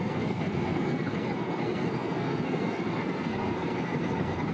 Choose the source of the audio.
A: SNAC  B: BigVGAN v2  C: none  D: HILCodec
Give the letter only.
A